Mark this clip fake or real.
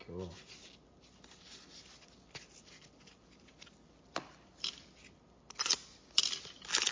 real